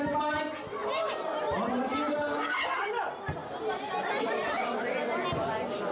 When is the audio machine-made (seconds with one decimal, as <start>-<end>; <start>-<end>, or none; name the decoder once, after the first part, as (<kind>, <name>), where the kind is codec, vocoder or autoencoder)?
0.8-2.4 (vocoder, BigVGAN v2); 3.4-4.7